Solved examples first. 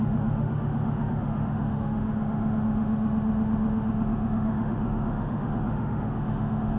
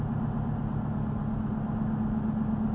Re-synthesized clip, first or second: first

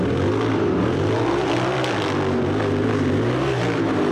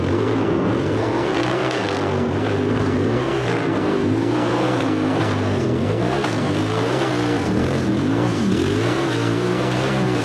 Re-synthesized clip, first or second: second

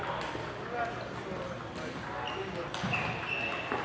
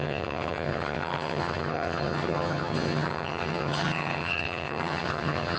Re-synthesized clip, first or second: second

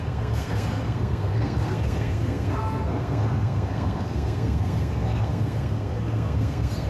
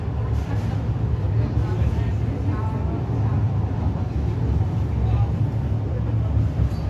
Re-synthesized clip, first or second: first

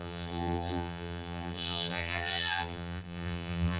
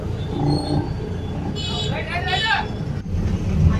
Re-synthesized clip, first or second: first